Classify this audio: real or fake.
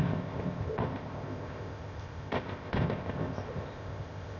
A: fake